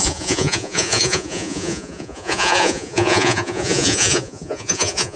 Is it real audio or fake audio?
fake